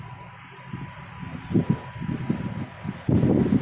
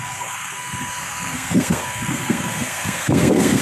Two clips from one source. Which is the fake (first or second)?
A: second